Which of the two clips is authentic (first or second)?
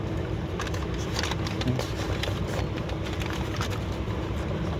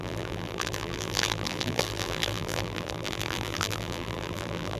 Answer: first